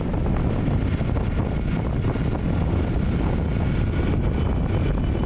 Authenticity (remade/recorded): recorded